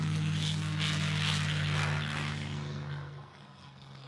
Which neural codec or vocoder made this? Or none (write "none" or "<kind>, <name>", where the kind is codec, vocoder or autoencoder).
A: codec, SNAC